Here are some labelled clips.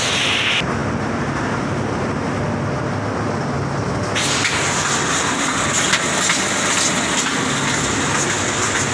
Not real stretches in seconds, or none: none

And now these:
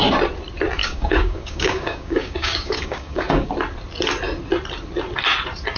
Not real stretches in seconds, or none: 0.8-3.5

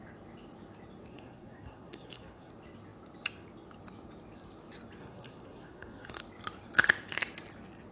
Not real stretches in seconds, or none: 1.1-2.5; 5.0-6.2

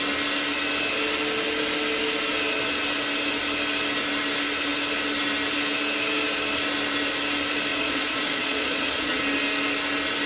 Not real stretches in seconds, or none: 7.7-9.2

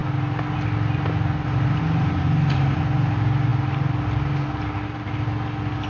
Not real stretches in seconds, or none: none

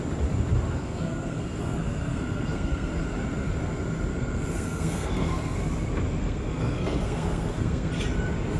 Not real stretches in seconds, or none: 0.8-2.9; 4.1-5.6; 6.2-7.9

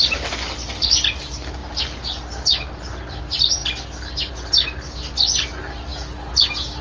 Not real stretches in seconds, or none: none

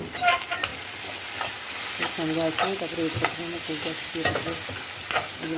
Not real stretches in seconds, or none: none